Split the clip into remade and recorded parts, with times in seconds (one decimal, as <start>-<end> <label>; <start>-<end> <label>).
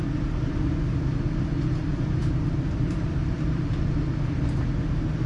0.0-1.9 recorded; 1.9-4.3 remade; 4.3-5.3 recorded